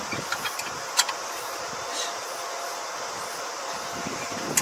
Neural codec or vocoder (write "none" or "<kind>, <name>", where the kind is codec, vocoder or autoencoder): none